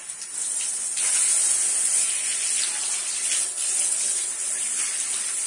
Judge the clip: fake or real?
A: real